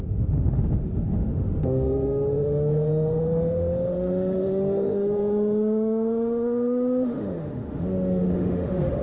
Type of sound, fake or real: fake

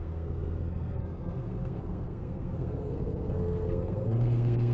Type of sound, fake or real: fake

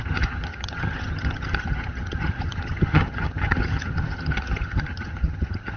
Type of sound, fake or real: fake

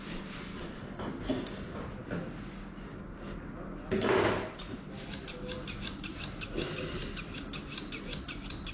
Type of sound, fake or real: real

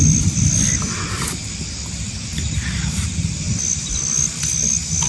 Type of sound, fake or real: real